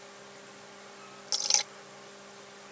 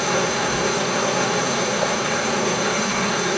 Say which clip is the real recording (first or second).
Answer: first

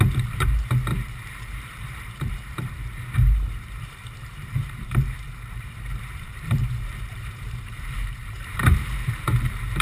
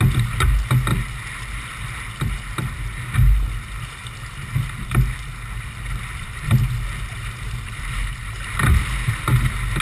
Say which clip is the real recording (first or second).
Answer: second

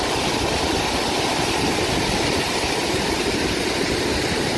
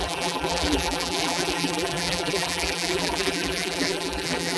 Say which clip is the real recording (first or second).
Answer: first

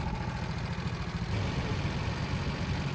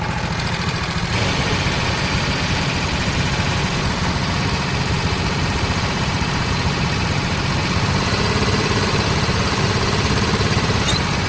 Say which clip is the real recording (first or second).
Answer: first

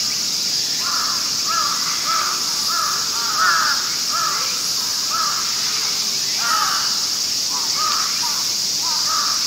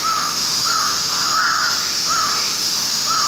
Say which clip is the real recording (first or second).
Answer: first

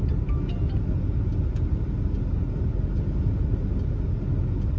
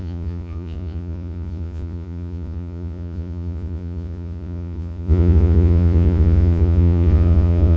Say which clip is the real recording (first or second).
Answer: first